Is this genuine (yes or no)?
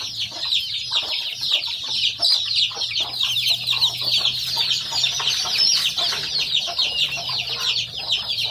yes